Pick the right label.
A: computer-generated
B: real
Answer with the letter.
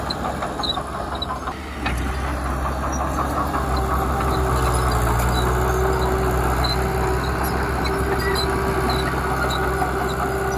B